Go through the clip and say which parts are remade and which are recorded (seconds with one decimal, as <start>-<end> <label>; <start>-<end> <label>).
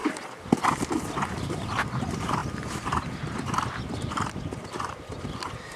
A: 0.0-1.5 recorded; 1.5-5.8 remade